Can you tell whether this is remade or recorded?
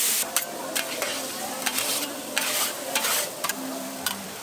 remade